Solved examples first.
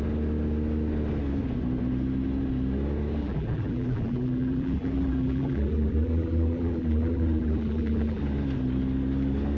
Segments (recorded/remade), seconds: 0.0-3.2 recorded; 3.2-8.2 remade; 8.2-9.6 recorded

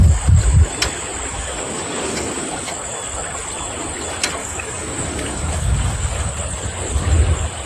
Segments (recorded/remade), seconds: 0.0-1.3 recorded; 1.3-2.7 remade; 2.7-4.4 recorded; 4.4-6.3 remade; 6.3-7.7 recorded

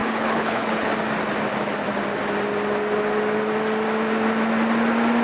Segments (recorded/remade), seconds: 0.0-0.9 remade; 0.9-5.2 recorded

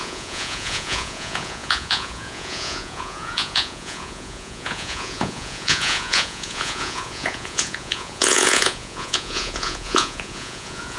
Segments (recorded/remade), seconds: 0.0-11.0 remade

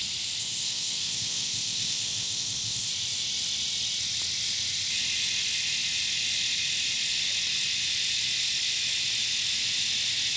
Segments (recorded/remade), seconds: 0.0-0.4 recorded; 0.4-2.9 remade; 2.9-10.4 recorded

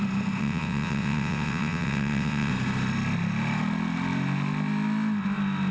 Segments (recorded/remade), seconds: 0.0-0.4 recorded; 0.4-2.5 remade; 2.5-5.7 recorded

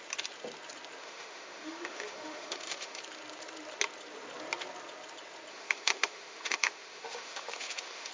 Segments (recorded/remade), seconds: 0.0-1.0 recorded; 1.0-3.0 remade; 3.0-5.5 recorded; 5.5-8.1 remade

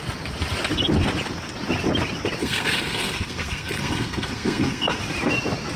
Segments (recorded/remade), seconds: 0.0-2.4 recorded; 2.4-5.0 remade; 5.0-5.8 recorded